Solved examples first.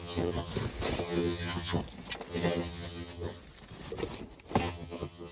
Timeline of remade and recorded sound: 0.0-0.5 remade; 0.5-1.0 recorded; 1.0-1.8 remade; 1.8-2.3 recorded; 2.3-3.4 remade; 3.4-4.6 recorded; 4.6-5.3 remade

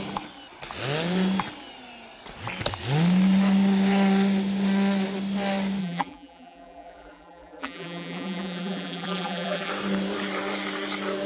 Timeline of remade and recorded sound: 0.0-5.8 recorded; 5.8-9.7 remade; 9.7-11.3 recorded

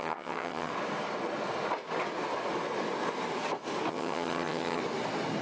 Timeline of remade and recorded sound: 0.0-0.7 remade; 0.7-3.9 recorded; 3.9-4.8 remade; 4.8-5.4 recorded

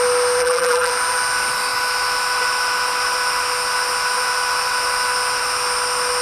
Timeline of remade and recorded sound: 0.0-0.4 recorded; 0.4-0.9 remade; 0.9-6.2 recorded

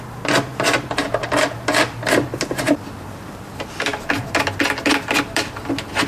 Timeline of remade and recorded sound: 0.0-6.1 recorded